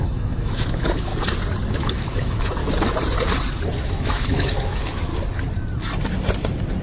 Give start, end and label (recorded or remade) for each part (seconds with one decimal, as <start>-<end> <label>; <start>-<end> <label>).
0.0-1.1 remade; 1.1-1.7 recorded; 1.7-2.6 remade; 2.6-3.8 recorded; 3.8-5.1 remade; 5.1-6.8 recorded